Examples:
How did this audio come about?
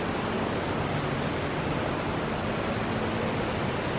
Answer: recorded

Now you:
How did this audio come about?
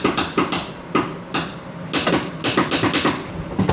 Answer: recorded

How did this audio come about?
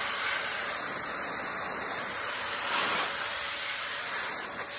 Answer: remade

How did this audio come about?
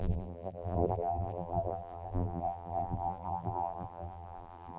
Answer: remade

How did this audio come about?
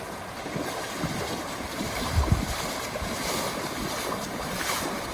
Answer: remade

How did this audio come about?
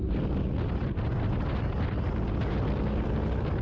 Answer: recorded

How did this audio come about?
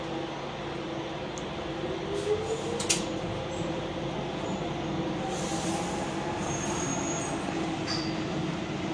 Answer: recorded